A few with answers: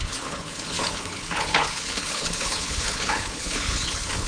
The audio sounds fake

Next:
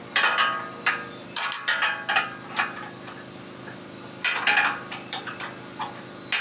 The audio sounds real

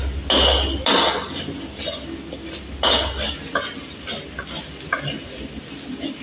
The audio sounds real